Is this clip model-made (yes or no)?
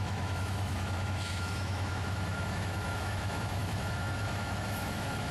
yes